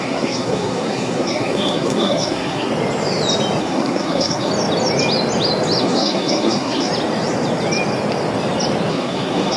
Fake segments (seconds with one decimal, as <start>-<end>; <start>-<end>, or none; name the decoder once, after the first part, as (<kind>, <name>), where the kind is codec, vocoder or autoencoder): 0.0-2.7 (codec, SNAC); 3.6-4.5; 5.8-6.9; 8.9-9.6